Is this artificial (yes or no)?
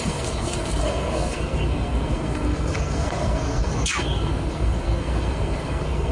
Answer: yes